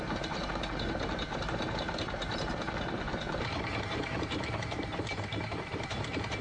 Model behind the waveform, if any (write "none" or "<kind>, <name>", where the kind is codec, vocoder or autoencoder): vocoder, BigVGAN v2